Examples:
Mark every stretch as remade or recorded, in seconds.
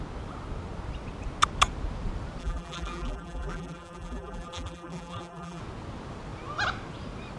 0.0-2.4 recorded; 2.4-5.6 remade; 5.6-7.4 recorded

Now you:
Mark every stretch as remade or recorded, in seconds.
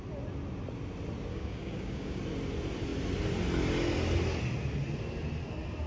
0.0-1.3 recorded; 1.3-2.2 remade; 2.2-5.9 recorded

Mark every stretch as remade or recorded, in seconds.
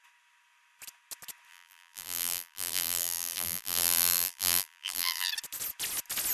0.0-1.5 recorded; 1.5-5.3 remade; 5.3-6.3 recorded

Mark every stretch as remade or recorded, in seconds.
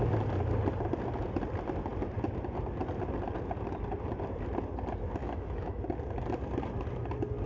0.0-5.2 recorded; 5.2-5.8 remade; 5.8-7.5 recorded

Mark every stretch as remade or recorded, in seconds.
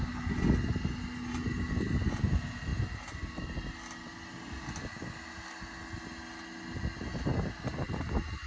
0.0-8.5 recorded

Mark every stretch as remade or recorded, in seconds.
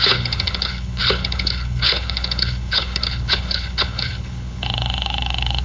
0.0-5.6 remade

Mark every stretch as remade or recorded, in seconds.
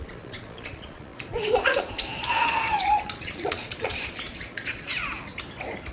0.0-4.9 remade; 4.9-5.9 recorded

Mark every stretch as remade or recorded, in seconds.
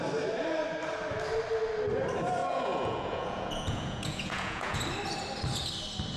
0.0-2.4 recorded; 2.4-4.8 remade; 4.8-6.2 recorded